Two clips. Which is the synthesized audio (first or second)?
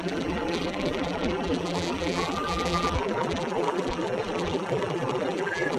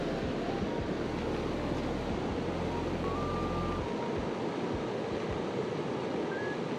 first